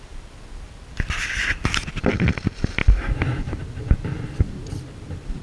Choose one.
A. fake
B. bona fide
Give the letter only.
A